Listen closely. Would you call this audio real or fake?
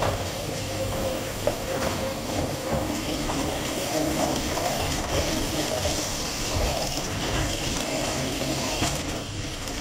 fake